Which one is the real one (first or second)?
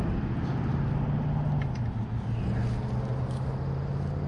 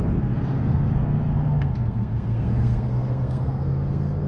first